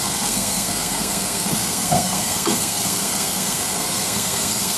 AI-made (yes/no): yes